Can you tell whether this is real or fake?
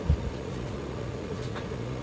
fake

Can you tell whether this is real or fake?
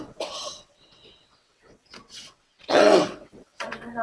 fake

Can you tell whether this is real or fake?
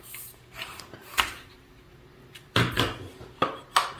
fake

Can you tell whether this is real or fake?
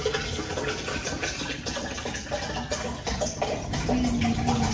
real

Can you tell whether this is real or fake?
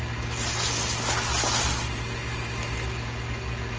real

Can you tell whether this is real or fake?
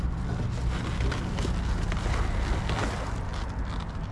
real